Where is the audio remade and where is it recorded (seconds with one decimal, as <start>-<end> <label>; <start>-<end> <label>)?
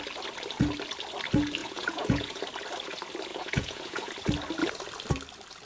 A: 0.0-1.6 recorded; 1.6-2.4 remade; 2.4-3.3 recorded; 3.3-4.1 remade; 4.1-5.7 recorded